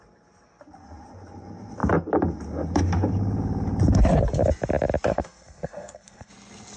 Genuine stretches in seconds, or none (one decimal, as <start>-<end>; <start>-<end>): 0.0-5.1; 6.3-6.8